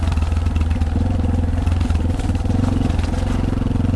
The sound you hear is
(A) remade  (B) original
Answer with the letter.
B